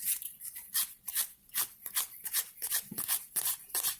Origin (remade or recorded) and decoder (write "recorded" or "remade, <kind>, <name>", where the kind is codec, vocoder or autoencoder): recorded